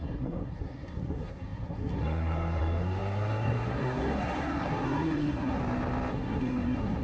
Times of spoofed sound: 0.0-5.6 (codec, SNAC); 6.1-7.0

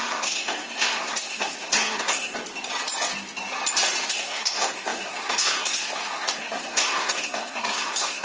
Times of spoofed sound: 0.0-2.3 (codec, SNAC); 4.1-8.2

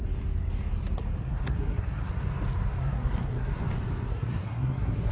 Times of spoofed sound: 1.2-2.1 (codec, SNAC); 2.8-3.6; 4.1-5.1

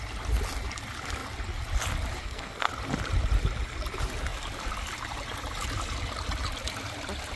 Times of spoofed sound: 2.2-2.7 (codec, SNAC)

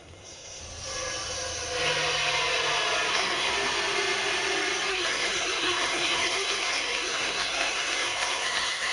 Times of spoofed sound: 0.0-0.6 (codec, SNAC); 3.1-3.5; 4.9-8.9

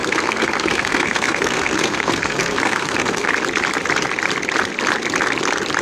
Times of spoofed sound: 0.0-3.3 (codec, SNAC)

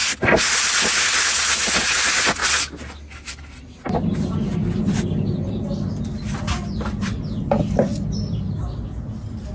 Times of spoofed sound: none

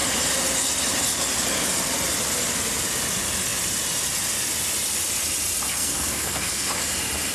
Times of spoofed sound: 5.7-6.7 (codec, SNAC)